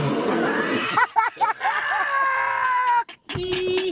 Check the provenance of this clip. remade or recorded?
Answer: recorded